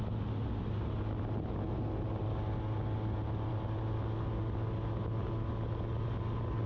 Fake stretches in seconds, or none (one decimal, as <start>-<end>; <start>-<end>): none